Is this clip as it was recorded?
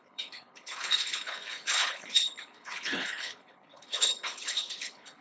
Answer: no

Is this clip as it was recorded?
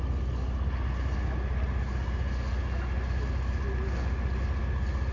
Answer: yes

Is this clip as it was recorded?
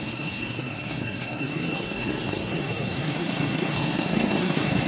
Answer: no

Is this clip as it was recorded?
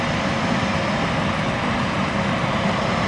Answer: yes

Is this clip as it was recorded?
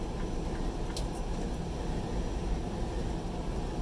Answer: yes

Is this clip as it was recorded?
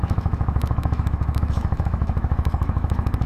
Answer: no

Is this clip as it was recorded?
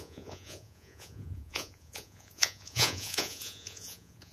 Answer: no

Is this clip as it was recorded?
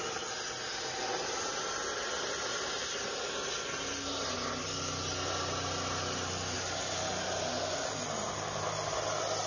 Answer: yes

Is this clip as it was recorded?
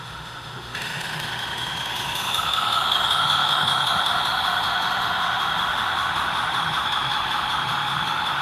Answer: no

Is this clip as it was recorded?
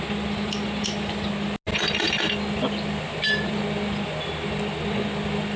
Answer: yes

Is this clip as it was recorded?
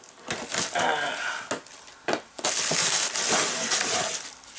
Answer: yes